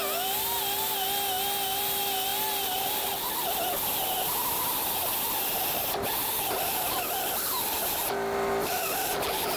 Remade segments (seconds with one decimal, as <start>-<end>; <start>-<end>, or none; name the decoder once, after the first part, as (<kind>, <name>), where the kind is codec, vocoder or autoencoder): none